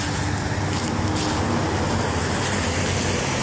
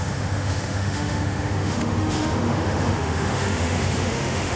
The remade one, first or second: second